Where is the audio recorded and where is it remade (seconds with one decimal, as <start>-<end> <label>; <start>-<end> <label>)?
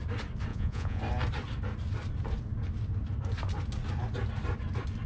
0.0-0.5 recorded; 0.5-1.0 remade; 1.0-5.1 recorded